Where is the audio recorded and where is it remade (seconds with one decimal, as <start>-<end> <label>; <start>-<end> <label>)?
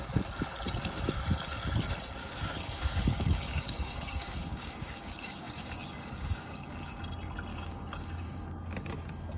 0.0-2.2 recorded; 2.2-7.0 remade; 7.0-7.5 recorded; 7.5-8.4 remade; 8.4-9.4 recorded